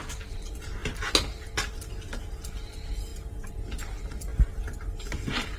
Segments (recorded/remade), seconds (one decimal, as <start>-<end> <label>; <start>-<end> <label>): 0.0-5.6 recorded